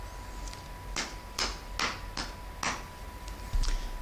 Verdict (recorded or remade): recorded